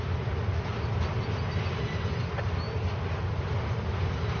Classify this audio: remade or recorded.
recorded